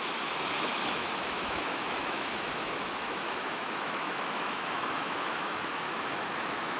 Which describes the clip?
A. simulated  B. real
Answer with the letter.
A